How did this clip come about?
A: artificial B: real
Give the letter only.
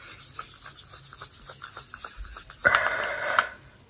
B